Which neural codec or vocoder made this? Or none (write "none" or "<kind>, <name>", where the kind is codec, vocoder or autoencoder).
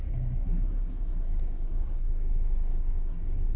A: codec, SNAC